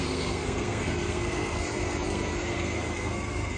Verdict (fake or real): fake